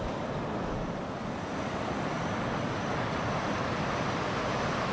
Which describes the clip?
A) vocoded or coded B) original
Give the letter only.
A